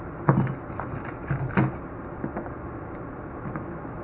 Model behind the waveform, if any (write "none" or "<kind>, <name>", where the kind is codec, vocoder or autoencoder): none